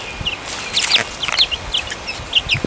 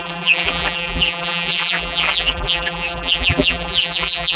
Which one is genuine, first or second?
first